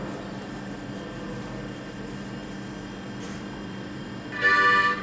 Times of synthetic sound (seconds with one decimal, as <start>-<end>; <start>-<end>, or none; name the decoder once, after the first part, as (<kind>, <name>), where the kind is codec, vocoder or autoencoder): 2.4-4.1 (vocoder, BigVGAN v2)